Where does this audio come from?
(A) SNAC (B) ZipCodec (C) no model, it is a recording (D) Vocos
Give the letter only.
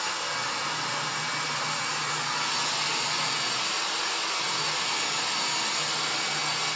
C